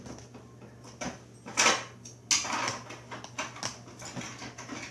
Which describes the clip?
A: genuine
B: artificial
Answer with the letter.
A